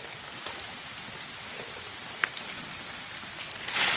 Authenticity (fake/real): real